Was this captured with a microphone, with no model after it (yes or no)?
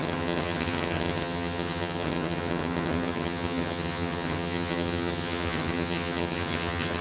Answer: no